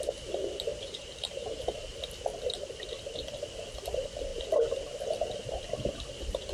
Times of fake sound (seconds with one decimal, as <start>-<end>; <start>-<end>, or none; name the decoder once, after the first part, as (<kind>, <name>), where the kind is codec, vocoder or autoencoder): 0.7-1.6 (vocoder, BigVGAN v2)